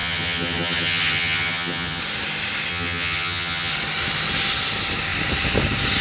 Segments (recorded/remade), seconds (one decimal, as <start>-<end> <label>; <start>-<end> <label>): 0.0-2.0 remade; 2.0-2.7 recorded; 2.7-3.7 remade; 3.7-6.0 recorded